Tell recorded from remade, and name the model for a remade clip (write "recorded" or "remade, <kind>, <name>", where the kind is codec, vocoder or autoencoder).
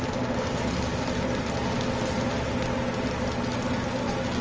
recorded